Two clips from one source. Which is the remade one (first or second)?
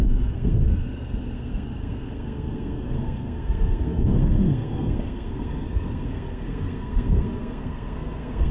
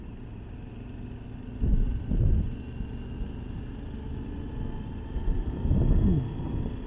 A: first